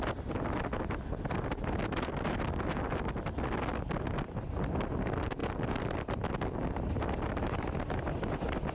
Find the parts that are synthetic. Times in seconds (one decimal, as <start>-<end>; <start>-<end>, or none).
none